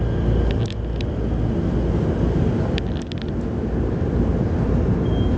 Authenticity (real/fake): real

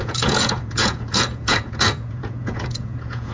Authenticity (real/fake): fake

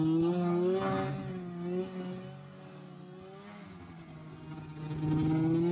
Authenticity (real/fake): real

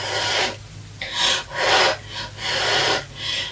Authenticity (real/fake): real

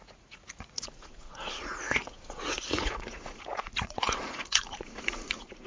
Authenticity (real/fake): fake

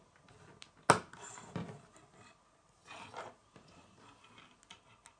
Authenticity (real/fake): real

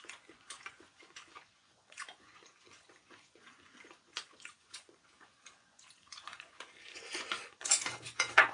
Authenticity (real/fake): fake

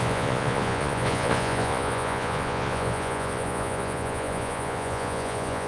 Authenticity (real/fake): fake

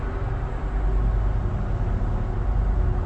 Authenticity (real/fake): real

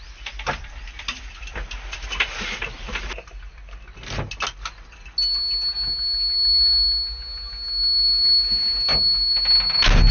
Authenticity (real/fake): real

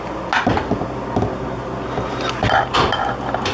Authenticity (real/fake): real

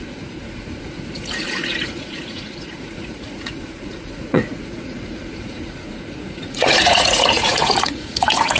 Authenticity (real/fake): fake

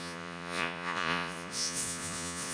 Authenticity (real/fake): fake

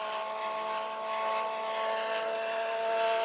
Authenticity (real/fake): real